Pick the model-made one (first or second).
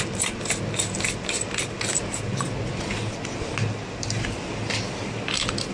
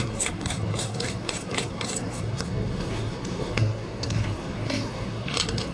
second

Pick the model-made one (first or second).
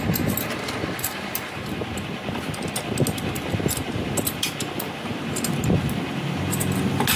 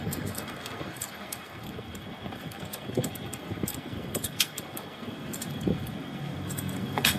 second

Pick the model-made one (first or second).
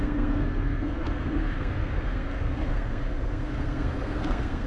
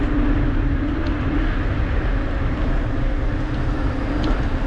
first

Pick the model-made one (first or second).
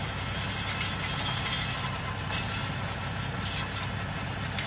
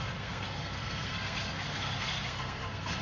second